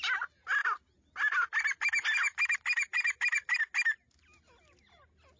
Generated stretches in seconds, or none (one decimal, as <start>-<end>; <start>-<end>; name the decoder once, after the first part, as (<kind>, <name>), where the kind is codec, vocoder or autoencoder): none